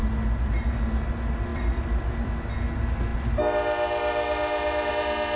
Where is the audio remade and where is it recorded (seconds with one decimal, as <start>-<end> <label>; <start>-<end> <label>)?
0.0-0.5 remade; 0.5-1.5 recorded; 1.5-2.3 remade; 2.3-5.4 recorded